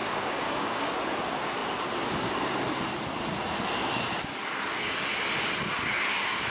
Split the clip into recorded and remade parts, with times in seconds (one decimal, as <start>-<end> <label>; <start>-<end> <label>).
0.0-0.9 remade; 0.9-6.5 recorded